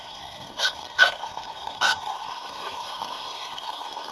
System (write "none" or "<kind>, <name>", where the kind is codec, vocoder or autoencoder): codec, SNAC